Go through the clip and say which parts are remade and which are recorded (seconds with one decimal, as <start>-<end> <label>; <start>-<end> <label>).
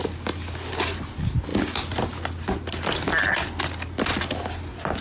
0.0-5.0 recorded